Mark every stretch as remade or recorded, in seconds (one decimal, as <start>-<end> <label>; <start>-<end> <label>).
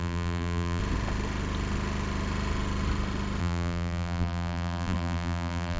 0.0-0.8 remade; 0.8-3.4 recorded; 3.4-5.8 remade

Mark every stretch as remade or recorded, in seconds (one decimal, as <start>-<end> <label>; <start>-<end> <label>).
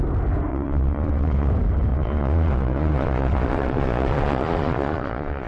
0.0-0.5 recorded; 0.5-1.5 remade; 1.5-1.9 recorded; 1.9-5.5 remade